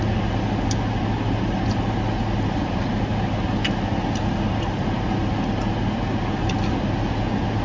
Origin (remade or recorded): recorded